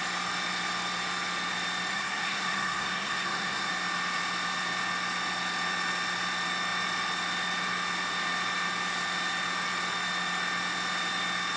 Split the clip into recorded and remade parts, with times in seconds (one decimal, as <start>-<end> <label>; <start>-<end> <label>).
0.0-1.9 recorded; 1.9-3.7 remade; 3.7-11.6 recorded